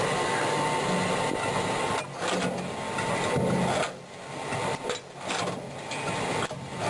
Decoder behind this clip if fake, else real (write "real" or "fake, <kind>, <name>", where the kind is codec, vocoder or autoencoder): real